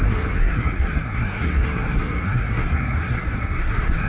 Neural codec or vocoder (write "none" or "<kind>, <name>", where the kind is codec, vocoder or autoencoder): codec, SNAC